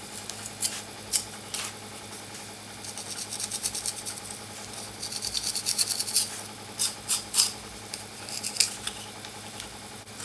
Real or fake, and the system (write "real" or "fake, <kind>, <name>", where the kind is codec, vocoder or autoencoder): real